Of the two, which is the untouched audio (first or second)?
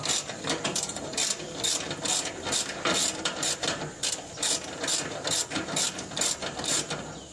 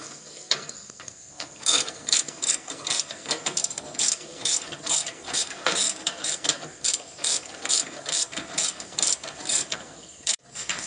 first